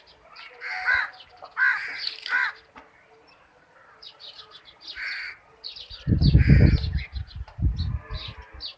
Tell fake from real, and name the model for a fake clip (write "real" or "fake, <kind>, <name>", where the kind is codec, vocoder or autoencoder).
fake, vocoder, BigVGAN v2